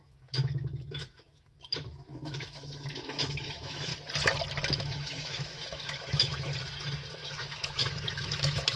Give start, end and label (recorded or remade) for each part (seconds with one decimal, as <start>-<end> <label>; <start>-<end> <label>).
0.0-3.9 remade; 3.9-4.7 recorded; 4.7-6.5 remade; 6.5-7.1 recorded; 7.1-8.8 remade